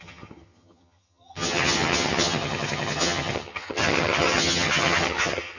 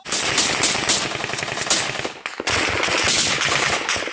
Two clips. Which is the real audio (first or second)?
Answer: second